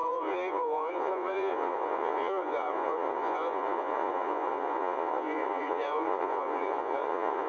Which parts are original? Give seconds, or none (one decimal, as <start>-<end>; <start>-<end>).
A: none